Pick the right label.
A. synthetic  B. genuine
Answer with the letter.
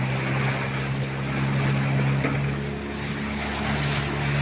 B